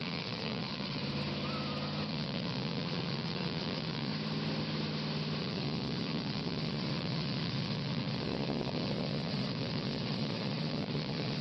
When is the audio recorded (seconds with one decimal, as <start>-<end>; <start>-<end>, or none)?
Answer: 1.0-2.1; 4.1-5.4